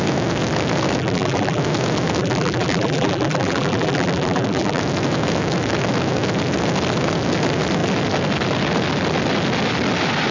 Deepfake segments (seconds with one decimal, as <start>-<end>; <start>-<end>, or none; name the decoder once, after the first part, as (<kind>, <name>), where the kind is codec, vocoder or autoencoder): 1.0-1.6 (vocoder, BigVGAN v2); 2.2-4.8